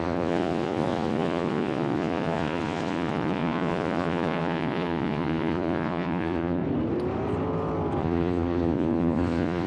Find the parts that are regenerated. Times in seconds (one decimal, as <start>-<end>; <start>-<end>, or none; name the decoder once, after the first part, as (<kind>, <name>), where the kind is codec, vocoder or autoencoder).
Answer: 0.0-6.6 (vocoder, Vocos); 8.0-9.7